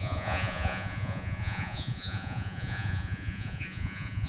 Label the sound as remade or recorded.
remade